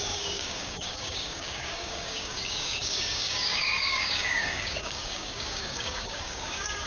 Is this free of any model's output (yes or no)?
no